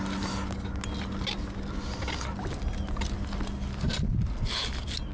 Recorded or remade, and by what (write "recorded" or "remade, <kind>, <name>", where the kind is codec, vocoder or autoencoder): recorded